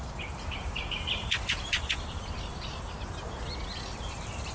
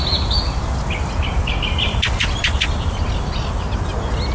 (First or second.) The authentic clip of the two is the second